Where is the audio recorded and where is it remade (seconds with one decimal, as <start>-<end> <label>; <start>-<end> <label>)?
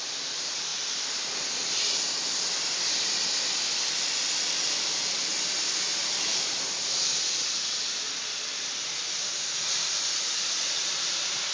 0.0-0.7 recorded; 0.7-3.1 remade; 3.1-11.5 recorded